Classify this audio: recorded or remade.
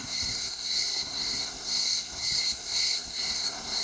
remade